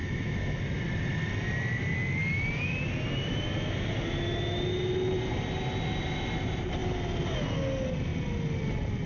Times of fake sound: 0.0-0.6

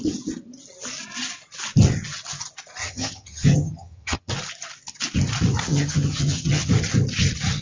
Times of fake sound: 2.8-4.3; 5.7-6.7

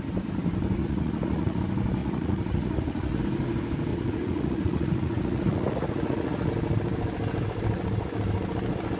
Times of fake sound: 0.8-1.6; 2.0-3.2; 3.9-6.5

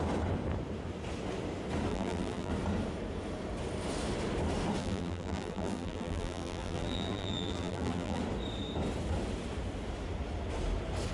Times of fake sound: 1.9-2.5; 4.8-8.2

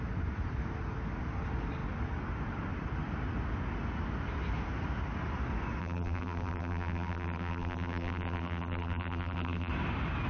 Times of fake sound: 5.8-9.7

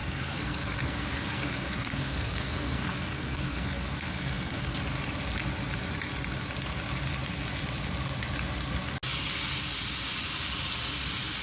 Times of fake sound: 0.0-4.8